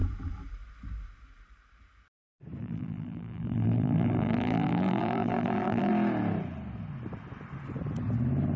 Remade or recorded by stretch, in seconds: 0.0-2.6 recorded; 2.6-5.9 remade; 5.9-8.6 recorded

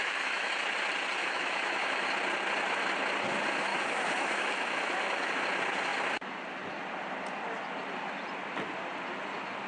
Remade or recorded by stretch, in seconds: 0.0-0.5 remade; 0.5-1.2 recorded; 1.2-2.1 remade; 2.1-3.7 recorded; 3.7-5.3 remade; 5.3-9.7 recorded

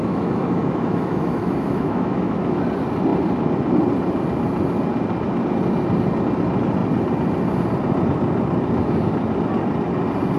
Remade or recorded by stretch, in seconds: 0.0-2.6 remade; 2.6-10.4 recorded

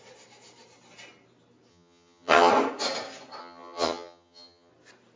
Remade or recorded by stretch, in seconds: 0.0-1.7 recorded; 1.7-2.5 remade; 2.5-3.4 recorded; 3.4-4.7 remade; 4.7-5.2 recorded

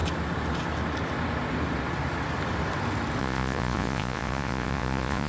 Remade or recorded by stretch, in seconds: 0.0-3.2 recorded; 3.2-5.3 remade

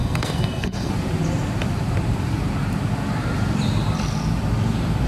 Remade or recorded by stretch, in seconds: 0.0-0.9 remade; 0.9-5.1 recorded